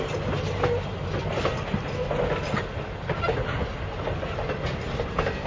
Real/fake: real